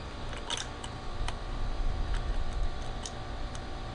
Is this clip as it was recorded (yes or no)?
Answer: yes